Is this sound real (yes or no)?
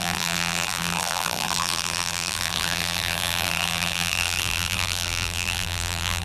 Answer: no